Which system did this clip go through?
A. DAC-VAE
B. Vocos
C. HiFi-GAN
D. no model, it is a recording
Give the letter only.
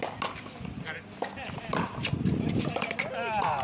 D